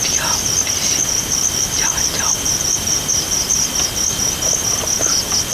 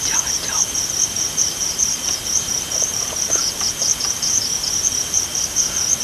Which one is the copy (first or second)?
second